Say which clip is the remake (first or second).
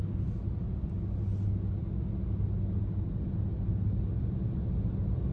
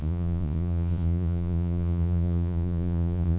second